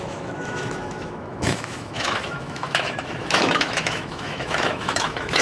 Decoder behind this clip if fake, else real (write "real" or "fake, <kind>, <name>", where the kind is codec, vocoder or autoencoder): fake, autoencoder, DAC-VAE